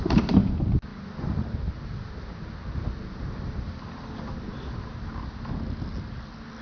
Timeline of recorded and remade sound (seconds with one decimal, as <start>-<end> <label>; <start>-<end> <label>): 0.0-6.6 recorded